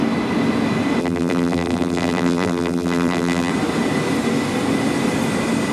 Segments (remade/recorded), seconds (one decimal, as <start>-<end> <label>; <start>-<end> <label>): 0.0-1.0 recorded; 1.0-3.5 remade; 3.5-5.7 recorded